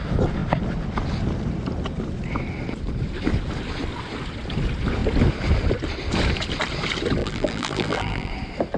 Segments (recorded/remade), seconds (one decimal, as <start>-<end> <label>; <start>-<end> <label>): 0.0-7.2 recorded; 7.2-8.3 remade; 8.3-8.8 recorded